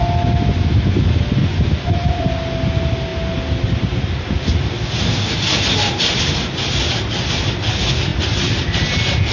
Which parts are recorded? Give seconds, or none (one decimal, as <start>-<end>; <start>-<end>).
0.0-1.4; 2.2-9.3